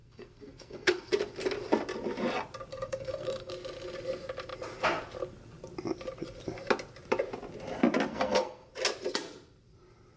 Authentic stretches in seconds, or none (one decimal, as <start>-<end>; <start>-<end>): 1.1-2.7; 3.5-8.1; 8.7-10.2